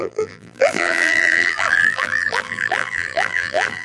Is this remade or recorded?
remade